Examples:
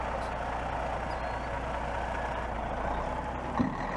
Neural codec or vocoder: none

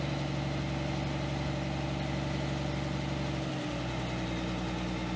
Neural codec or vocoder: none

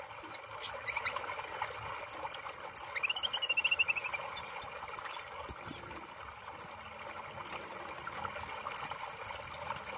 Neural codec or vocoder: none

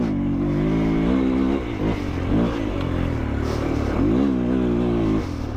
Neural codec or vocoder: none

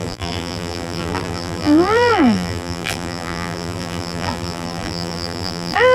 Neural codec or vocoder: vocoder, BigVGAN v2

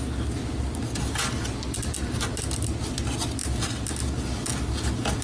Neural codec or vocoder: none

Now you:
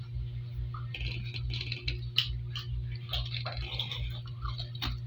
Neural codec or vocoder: none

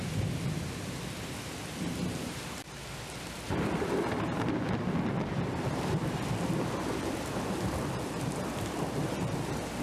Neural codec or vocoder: vocoder, BigVGAN v2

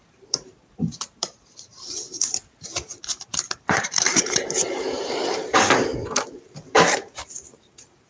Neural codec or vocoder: vocoder, BigVGAN v2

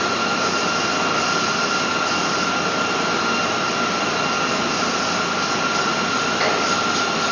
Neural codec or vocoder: none